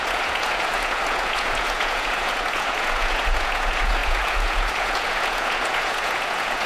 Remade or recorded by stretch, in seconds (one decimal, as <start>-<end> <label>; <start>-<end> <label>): 0.0-6.7 remade